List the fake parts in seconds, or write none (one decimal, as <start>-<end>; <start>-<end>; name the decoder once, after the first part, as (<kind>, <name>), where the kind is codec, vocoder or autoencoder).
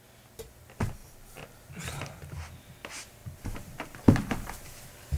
1.0-1.7 (vocoder, BigVGAN v2); 3.2-4.6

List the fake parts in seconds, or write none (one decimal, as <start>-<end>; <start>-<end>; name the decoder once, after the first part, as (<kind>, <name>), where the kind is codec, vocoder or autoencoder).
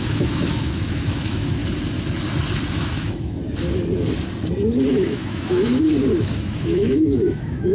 0.0-1.6 (autoencoder, DAC-VAE); 2.7-3.4; 4.9-5.7; 6.2-7.7